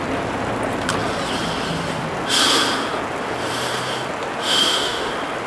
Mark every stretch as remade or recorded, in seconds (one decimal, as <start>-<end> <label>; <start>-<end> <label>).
0.0-4.4 recorded; 4.4-5.1 remade; 5.1-5.5 recorded